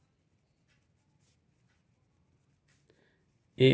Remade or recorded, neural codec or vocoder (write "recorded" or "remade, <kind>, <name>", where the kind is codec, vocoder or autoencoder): recorded